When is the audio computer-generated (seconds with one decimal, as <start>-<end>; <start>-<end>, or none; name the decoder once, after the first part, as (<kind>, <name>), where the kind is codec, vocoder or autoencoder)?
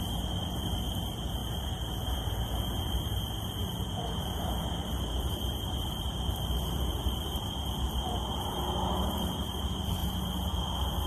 0.0-10.0 (vocoder, BigVGAN v2); 10.7-11.1